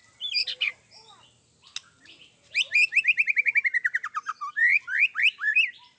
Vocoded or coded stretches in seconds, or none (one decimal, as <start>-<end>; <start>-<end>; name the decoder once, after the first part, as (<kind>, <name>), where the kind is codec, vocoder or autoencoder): none